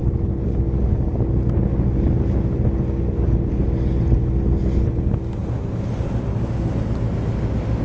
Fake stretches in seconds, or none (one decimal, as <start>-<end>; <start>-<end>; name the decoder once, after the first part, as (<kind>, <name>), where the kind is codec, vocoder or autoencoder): none